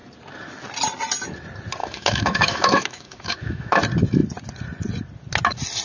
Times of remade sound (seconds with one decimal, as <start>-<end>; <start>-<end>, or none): 1.8-3.8